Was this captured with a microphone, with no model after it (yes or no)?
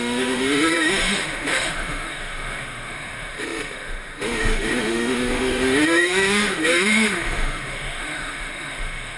no